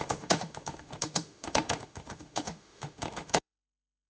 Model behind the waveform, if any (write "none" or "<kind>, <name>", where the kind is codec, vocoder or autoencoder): autoencoder, DAC-VAE